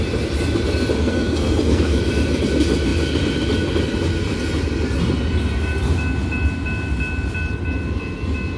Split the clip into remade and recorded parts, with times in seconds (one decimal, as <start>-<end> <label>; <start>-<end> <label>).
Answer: 0.0-1.0 recorded; 1.0-2.0 remade; 2.0-8.6 recorded